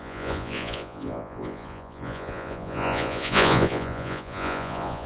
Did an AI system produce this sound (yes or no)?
yes